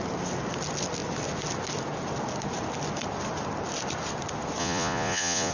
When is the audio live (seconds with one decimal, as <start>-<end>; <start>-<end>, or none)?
0.0-4.6